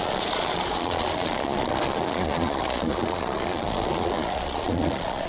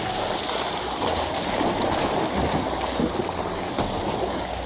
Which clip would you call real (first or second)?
second